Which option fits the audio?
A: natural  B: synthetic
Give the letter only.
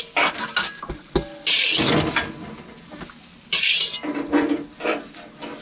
A